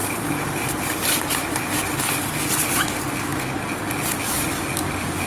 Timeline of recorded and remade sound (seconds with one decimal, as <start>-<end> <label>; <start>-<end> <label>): 0.0-1.6 remade; 1.6-5.3 recorded